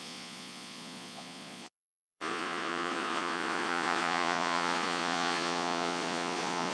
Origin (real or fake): fake